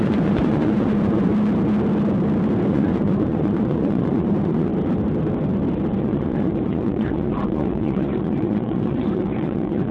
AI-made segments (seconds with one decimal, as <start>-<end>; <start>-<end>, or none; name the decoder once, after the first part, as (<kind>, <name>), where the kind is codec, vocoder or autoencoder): 0.0-1.3 (vocoder, Vocos); 2.7-4.7; 6.0-9.9